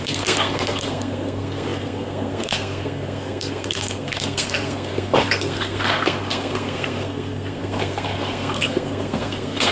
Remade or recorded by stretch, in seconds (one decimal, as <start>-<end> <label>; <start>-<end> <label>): 0.0-9.7 remade